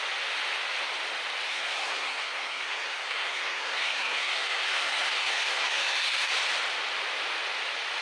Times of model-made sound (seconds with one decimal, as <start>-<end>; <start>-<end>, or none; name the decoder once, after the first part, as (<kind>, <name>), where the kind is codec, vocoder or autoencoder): 1.5-6.3 (codec, SNAC)